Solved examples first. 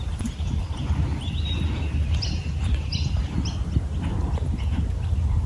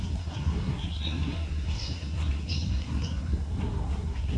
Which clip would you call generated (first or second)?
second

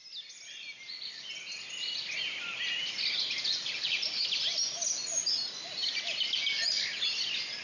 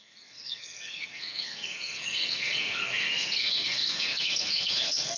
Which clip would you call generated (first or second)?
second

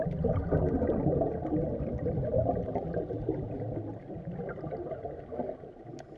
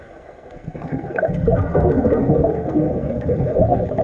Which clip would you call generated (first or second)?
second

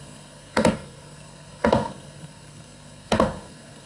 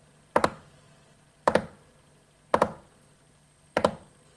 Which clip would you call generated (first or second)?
first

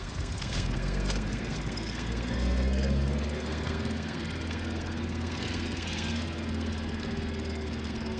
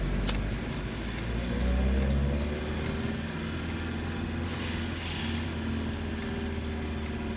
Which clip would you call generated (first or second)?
first